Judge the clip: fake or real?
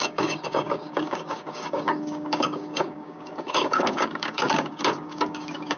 fake